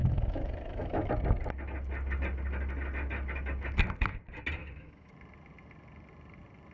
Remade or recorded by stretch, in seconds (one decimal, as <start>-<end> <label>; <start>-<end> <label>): 0.0-1.1 remade; 1.1-4.6 recorded; 4.6-5.1 remade; 5.1-6.7 recorded

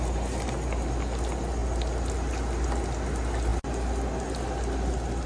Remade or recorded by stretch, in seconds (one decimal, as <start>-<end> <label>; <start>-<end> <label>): 0.0-5.3 recorded

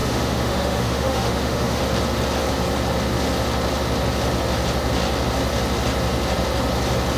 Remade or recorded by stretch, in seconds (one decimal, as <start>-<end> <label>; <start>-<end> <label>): 0.0-1.8 remade; 1.8-7.2 recorded